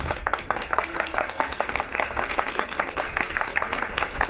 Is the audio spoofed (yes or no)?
yes